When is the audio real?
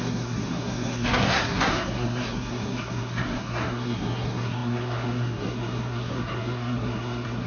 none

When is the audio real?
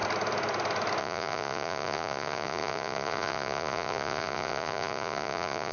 0.0-1.0